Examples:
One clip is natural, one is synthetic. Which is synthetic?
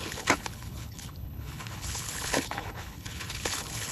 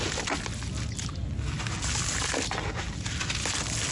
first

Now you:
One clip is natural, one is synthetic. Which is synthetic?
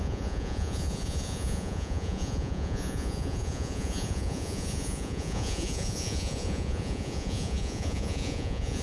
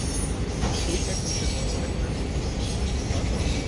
first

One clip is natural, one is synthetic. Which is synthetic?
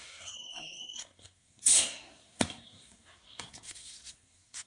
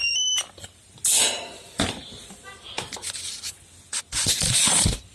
first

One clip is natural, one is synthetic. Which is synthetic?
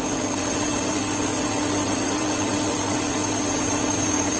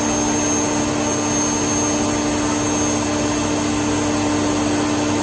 first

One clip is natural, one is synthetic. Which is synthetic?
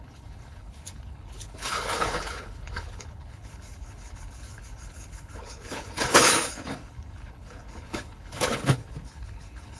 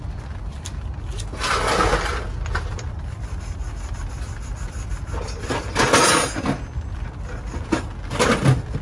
first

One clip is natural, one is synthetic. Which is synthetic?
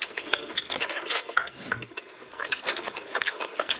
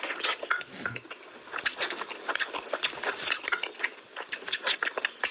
first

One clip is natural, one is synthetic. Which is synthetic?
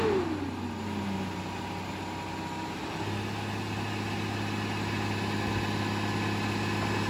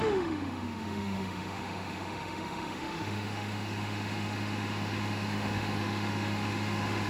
second